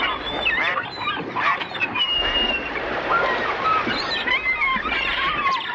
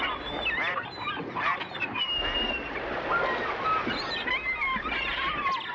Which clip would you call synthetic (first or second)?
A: first